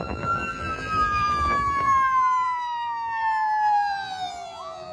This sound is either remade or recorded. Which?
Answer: remade